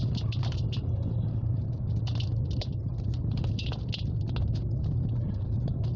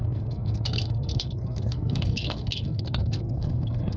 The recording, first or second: first